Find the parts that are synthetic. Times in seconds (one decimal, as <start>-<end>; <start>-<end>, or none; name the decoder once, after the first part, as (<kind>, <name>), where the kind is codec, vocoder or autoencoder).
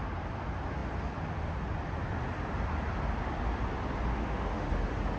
4.1-4.7 (autoencoder, DAC-VAE)